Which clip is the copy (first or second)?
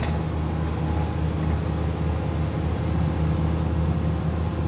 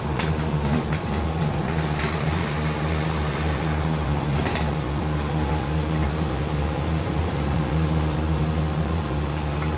second